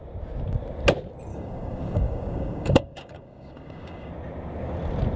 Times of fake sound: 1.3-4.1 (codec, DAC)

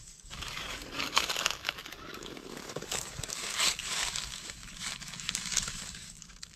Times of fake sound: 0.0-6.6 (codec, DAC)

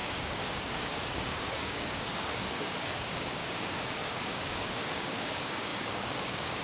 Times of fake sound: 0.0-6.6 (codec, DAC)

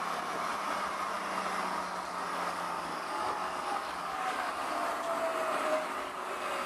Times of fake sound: 2.3-4.7 (codec, DAC); 5.7-6.3

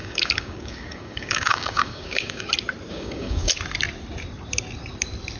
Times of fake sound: 0.0-2.5 (codec, DAC); 2.9-3.5

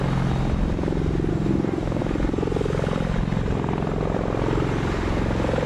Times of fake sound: 1.3-2.0 (codec, DAC)